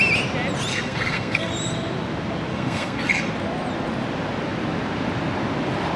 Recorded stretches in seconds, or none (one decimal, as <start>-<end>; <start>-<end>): 0.0-0.7; 1.5-2.5; 3.3-6.0